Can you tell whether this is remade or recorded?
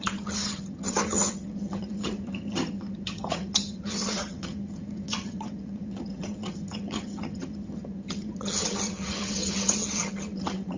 remade